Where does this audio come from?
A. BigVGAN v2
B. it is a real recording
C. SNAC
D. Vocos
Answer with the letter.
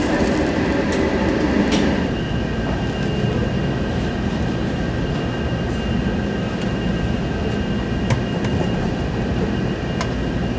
B